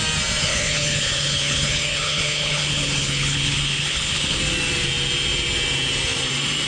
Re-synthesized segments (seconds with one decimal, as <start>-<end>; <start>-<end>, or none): 0.4-4.4